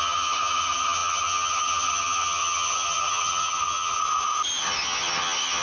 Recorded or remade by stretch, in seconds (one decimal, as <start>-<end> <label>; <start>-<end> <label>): 0.0-4.0 remade; 4.0-4.6 recorded; 4.6-5.6 remade